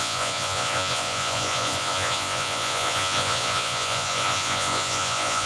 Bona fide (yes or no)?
no